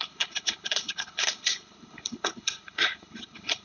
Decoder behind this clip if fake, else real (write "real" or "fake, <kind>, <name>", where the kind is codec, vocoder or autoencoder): fake, codec, HILCodec